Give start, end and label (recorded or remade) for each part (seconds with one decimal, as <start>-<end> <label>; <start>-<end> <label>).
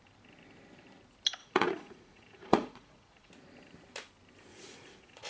0.0-1.4 recorded; 1.4-3.3 remade; 3.3-4.5 recorded; 4.5-5.3 remade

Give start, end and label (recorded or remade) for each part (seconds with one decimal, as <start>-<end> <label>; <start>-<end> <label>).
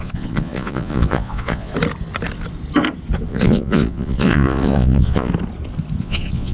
0.0-1.7 remade; 1.7-3.3 recorded; 3.3-5.3 remade; 5.3-6.0 recorded; 6.0-6.5 remade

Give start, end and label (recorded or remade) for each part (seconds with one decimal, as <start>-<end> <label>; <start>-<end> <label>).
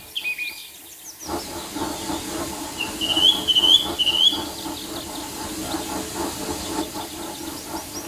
0.0-8.1 recorded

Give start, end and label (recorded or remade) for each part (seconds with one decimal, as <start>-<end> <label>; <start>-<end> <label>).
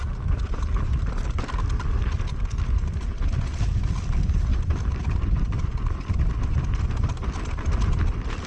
0.0-4.5 recorded; 4.5-5.2 remade; 5.2-8.5 recorded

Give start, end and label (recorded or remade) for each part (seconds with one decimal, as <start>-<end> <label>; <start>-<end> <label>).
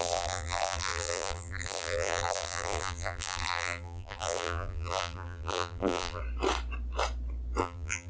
0.0-6.2 remade; 6.2-7.6 recorded; 7.6-8.1 remade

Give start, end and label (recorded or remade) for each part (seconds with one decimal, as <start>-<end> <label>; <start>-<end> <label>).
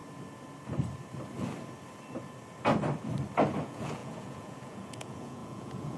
0.0-3.6 recorded; 3.6-6.0 remade